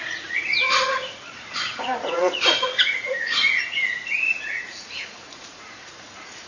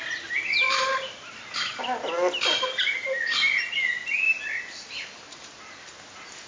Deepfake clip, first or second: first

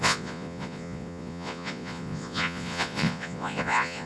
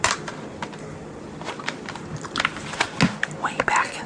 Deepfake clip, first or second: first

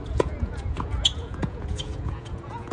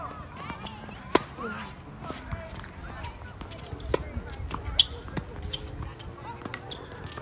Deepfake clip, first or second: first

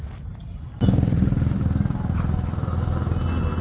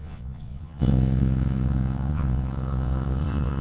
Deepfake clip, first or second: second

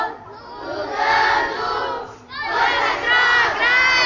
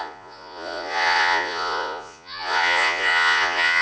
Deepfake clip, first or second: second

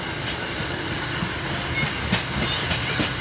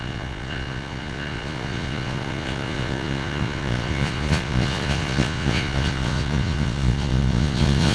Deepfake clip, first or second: second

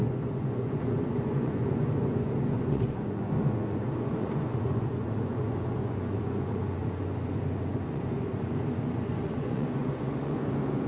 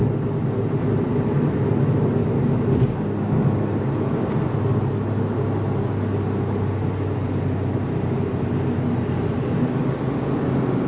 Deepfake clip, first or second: first